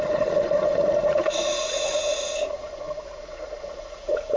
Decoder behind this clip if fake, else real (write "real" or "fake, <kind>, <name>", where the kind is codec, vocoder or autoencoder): fake, vocoder, Vocos